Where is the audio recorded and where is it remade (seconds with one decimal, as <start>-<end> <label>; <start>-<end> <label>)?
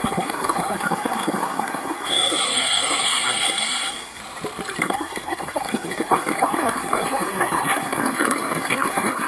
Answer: 0.0-4.2 remade; 4.2-4.8 recorded; 4.8-9.3 remade